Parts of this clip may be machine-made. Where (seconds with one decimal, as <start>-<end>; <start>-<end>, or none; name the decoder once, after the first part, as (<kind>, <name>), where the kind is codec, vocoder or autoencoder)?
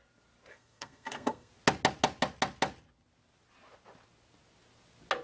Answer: 0.5-1.5 (codec, SNAC)